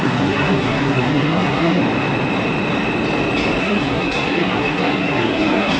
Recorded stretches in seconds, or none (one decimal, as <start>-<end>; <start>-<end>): 1.8-3.6